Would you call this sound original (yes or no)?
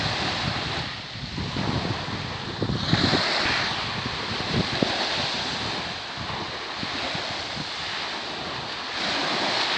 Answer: yes